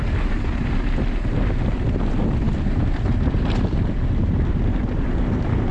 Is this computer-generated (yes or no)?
no